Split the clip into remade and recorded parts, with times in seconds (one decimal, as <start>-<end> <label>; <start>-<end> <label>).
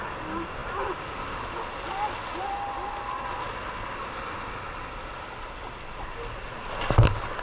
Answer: 0.0-7.4 recorded